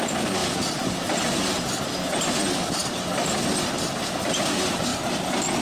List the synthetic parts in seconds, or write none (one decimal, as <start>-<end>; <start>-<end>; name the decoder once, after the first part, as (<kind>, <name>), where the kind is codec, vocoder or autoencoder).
0.0-2.8 (vocoder, BigVGAN v2); 3.6-4.9